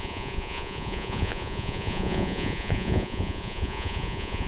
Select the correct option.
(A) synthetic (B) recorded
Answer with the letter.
A